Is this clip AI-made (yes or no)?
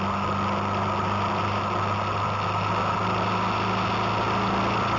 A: no